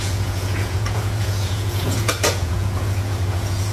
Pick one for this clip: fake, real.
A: fake